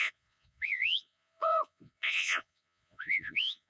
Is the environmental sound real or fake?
fake